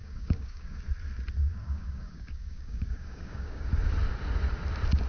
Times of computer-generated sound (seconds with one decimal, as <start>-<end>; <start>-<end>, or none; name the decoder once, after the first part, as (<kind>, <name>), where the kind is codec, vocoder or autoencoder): 0.0-0.8 (codec, DAC); 1.4-3.7